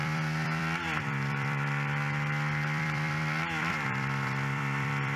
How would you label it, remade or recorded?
remade